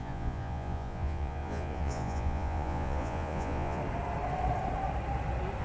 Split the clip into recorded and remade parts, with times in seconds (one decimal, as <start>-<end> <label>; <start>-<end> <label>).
0.0-3.8 remade; 3.8-5.6 recorded